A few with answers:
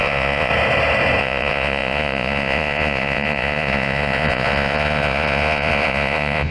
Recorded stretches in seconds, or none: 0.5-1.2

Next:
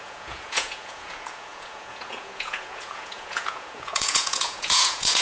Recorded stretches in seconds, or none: none

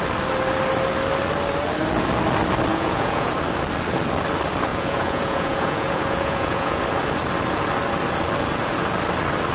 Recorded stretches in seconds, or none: 0.0-2.7; 3.3-4.7; 6.8-9.5

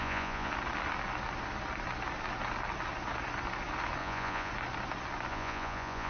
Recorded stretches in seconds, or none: 0.5-4.0; 4.5-5.3

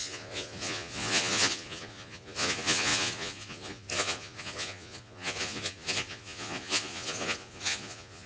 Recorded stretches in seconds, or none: none

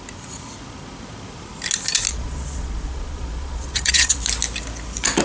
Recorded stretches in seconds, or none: 0.0-2.1; 4.2-5.2

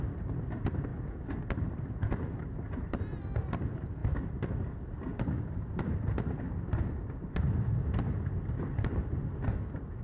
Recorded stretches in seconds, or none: 0.0-10.0